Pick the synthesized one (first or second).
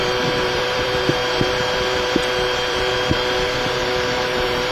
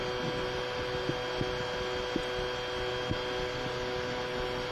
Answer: first